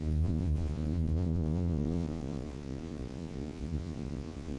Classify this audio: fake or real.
fake